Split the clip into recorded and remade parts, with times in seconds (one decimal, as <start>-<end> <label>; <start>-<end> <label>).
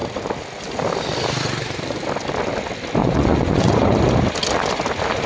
0.0-3.0 recorded; 3.0-4.1 remade; 4.1-5.3 recorded